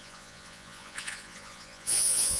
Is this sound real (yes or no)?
no